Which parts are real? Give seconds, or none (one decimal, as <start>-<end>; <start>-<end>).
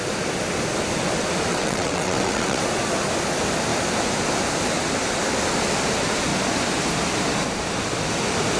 0.0-1.5; 2.6-8.6